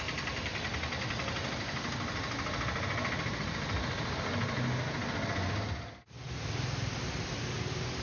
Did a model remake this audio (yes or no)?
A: no